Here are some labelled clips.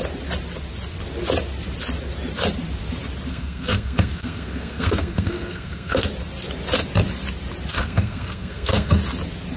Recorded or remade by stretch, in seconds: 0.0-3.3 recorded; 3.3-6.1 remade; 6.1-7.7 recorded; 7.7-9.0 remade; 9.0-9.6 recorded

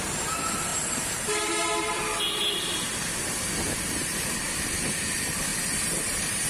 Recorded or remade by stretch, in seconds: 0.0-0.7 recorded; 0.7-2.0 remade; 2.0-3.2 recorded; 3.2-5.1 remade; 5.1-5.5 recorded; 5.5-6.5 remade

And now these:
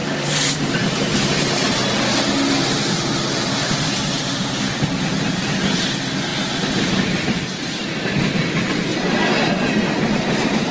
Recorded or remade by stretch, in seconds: 0.0-1.5 remade; 1.5-3.6 recorded; 3.6-4.8 remade; 4.8-6.3 recorded; 6.3-7.8 remade; 7.8-10.7 recorded